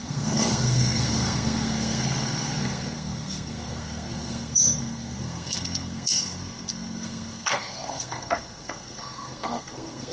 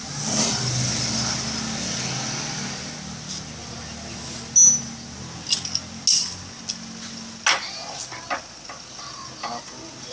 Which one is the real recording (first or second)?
second